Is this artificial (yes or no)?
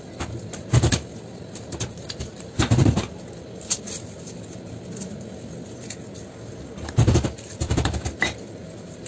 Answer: yes